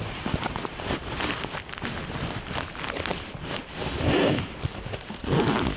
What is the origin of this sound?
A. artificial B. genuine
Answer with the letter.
B